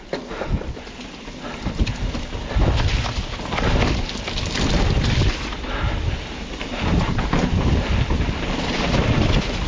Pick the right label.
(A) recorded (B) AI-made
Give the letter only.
A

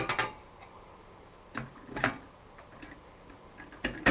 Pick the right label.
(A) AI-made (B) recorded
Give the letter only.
B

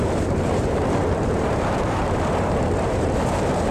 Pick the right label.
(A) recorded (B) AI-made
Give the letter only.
B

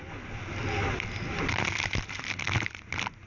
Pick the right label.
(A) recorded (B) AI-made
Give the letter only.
A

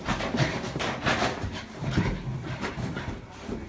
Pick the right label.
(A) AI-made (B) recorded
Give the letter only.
B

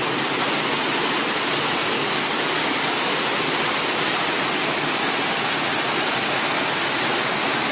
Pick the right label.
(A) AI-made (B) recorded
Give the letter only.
B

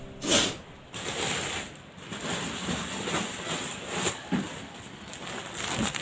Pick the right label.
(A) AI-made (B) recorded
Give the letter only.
B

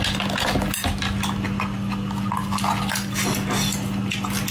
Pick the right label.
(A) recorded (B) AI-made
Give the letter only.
A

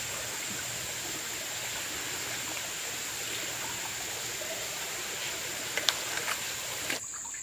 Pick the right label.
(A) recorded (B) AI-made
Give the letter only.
A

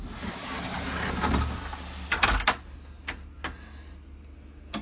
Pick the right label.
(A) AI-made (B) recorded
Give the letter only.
B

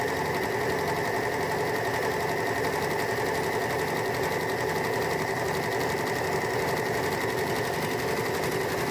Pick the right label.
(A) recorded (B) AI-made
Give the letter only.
A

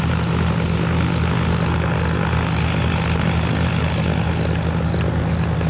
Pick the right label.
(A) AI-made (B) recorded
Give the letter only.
B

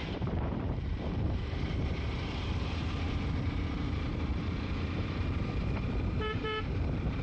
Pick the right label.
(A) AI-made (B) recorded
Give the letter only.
A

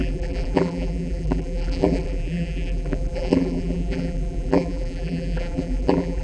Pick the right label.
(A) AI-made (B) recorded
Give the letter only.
A